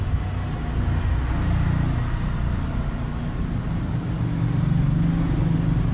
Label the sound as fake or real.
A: real